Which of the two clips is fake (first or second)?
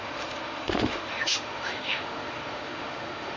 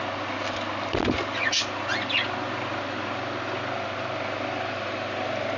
first